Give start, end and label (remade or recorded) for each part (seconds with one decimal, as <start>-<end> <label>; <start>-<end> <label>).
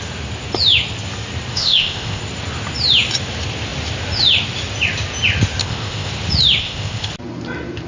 0.0-1.5 recorded; 1.5-2.2 remade; 2.2-5.6 recorded; 5.6-6.1 remade; 6.1-6.6 recorded; 6.6-7.1 remade; 7.1-7.9 recorded